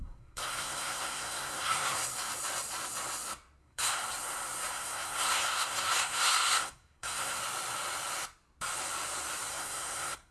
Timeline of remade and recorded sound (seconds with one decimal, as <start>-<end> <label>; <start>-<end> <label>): 0.0-2.0 remade; 2.0-3.6 recorded; 3.6-4.0 remade; 4.0-4.7 recorded; 4.7-7.4 remade; 7.4-9.5 recorded; 9.5-10.3 remade